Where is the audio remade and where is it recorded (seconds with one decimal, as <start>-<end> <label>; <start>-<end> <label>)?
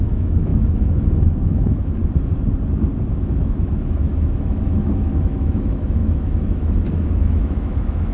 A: 0.0-2.0 remade; 2.0-3.2 recorded; 3.2-8.1 remade